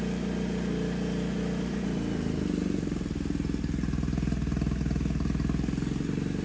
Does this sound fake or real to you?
real